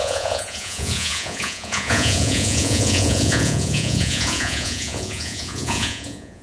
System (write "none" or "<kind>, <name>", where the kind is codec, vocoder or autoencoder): vocoder, Vocos